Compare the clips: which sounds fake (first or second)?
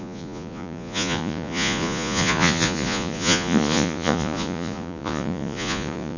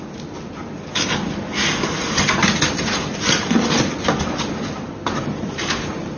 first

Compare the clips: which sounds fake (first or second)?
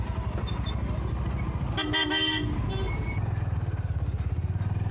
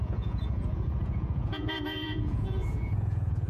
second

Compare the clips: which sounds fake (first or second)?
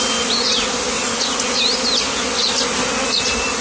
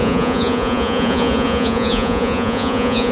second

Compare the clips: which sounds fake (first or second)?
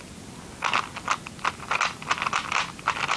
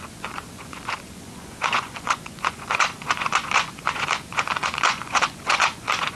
second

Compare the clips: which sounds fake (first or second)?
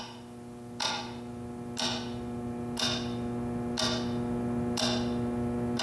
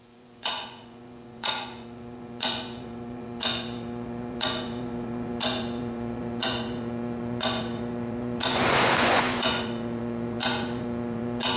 second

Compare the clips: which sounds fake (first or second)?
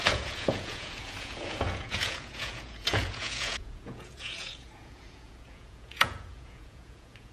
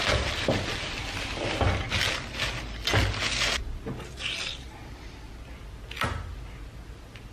first